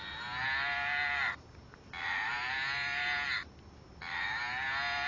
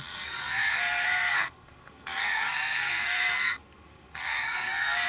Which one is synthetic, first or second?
second